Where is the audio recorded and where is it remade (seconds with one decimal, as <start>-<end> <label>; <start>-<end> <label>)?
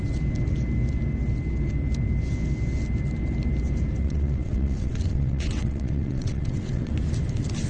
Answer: 0.0-4.0 recorded; 4.0-6.9 remade; 6.9-7.7 recorded